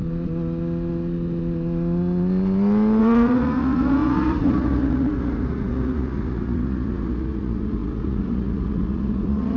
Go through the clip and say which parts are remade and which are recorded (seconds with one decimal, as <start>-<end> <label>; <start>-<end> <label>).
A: 0.0-3.0 recorded; 3.0-9.6 remade

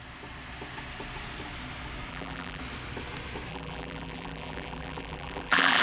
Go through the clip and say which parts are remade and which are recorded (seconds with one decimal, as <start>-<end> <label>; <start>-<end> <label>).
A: 0.0-2.1 recorded; 2.1-2.6 remade; 2.6-3.5 recorded; 3.5-5.8 remade

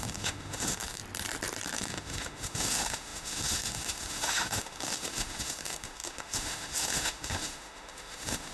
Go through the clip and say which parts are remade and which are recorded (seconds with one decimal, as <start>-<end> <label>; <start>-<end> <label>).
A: 0.0-1.0 remade; 1.0-1.7 recorded; 1.7-8.5 remade

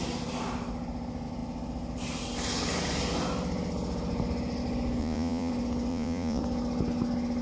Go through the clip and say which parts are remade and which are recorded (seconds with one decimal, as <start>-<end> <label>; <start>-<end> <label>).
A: 0.0-5.0 recorded; 5.0-5.5 remade; 5.5-5.9 recorded; 5.9-6.4 remade; 6.4-7.4 recorded

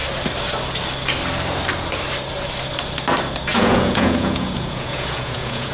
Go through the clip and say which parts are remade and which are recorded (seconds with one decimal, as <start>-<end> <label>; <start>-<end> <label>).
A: 0.0-3.5 recorded; 3.5-5.7 remade

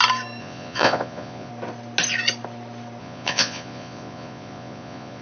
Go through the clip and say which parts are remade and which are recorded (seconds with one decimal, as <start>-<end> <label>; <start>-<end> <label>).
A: 0.0-0.4 recorded; 0.4-1.5 remade; 1.5-3.0 recorded; 3.0-5.2 remade

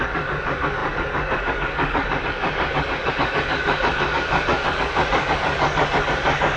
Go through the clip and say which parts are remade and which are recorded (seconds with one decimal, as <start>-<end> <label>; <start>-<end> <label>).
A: 0.0-6.6 remade

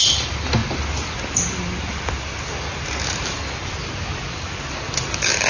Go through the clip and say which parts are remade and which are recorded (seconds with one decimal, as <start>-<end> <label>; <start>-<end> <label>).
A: 0.0-5.5 recorded